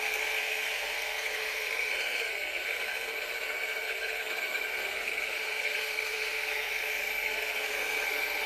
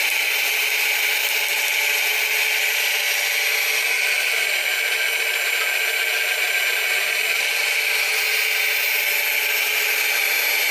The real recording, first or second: second